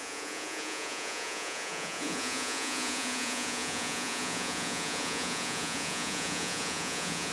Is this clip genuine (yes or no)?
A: no